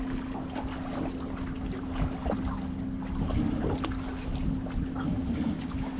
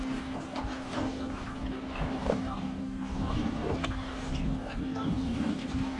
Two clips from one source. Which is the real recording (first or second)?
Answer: first